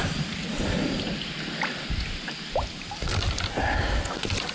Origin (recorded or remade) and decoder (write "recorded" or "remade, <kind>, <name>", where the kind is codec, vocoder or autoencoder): recorded